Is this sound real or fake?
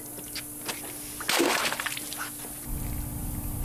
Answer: real